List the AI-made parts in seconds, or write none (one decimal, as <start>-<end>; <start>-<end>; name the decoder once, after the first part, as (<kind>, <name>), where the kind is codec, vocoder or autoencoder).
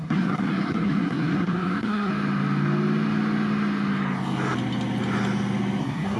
0.0-2.1 (codec, SNAC); 5.8-6.2